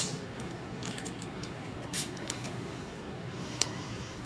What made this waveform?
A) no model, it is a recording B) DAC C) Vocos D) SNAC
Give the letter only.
D